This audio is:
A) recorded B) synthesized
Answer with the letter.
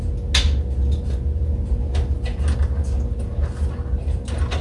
A